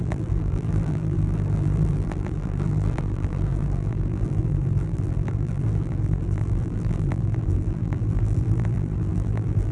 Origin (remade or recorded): remade